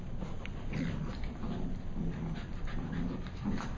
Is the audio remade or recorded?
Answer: recorded